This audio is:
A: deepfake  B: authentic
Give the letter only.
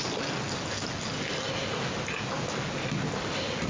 B